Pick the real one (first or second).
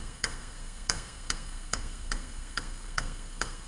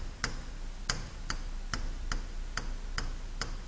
second